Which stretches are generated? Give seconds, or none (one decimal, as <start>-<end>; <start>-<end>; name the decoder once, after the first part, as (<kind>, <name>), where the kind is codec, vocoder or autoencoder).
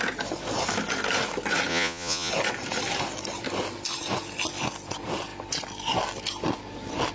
1.7-2.3 (vocoder, Vocos)